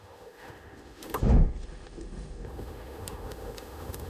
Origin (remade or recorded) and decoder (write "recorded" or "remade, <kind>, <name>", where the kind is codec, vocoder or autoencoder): remade, autoencoder, DAC-VAE